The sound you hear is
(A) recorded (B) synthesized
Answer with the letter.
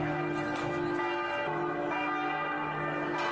A